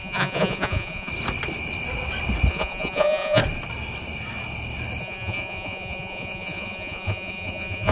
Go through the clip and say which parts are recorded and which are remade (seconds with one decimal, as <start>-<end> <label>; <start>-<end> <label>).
0.0-1.1 remade; 1.1-2.5 recorded; 2.5-3.4 remade; 3.4-5.0 recorded; 5.0-7.9 remade